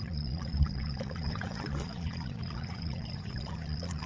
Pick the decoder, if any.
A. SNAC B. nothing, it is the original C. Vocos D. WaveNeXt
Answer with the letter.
C